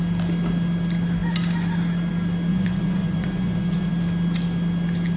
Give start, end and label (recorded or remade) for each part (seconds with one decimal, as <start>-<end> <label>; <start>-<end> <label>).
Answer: 0.0-2.5 recorded; 2.5-3.9 remade; 3.9-5.2 recorded